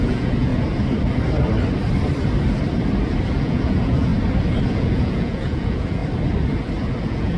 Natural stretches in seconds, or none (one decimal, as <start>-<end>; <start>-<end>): 0.5-3.4; 4.1-4.7; 6.0-7.0